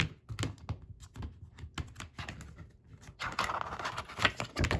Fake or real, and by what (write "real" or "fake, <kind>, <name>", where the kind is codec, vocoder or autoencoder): real